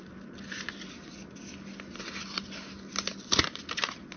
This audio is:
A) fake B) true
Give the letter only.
B